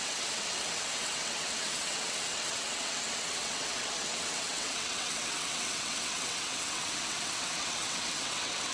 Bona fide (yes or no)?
no